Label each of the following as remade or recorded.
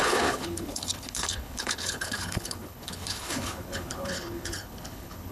remade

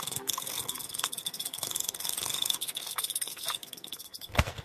remade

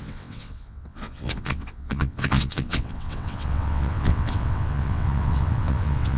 remade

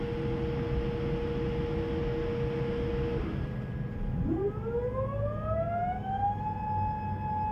recorded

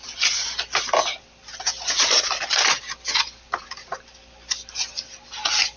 recorded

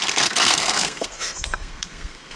remade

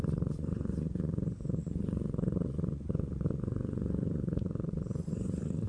remade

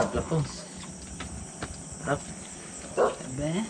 recorded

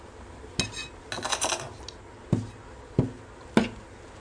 recorded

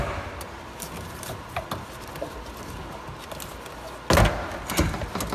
recorded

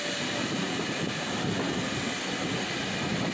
recorded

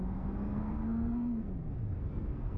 remade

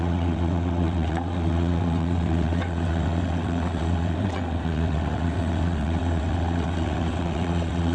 remade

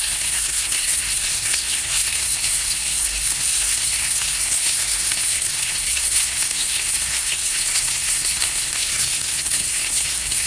remade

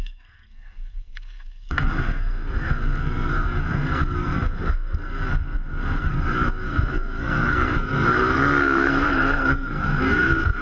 remade